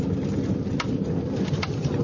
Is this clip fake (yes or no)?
no